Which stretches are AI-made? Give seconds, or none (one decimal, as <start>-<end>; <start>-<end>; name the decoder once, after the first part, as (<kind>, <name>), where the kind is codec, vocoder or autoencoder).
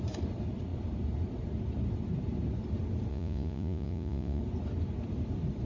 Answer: 3.1-4.4 (vocoder, Vocos)